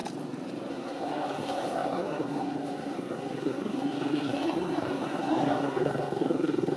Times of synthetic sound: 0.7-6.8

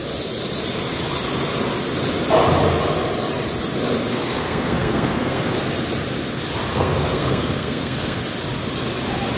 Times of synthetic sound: 4.1-5.6; 6.7-8.2

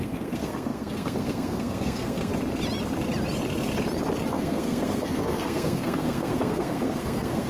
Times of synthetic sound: 0.0-2.3; 4.3-7.5